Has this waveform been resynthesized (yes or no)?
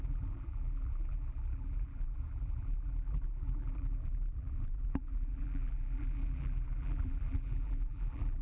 yes